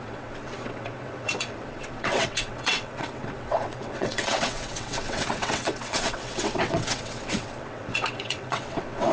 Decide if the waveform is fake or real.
fake